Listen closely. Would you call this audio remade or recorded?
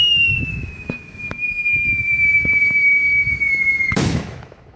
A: remade